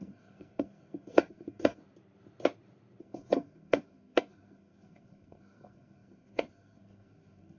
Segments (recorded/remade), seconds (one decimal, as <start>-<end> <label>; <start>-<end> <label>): 0.0-1.8 remade; 1.8-3.0 recorded; 3.0-7.6 remade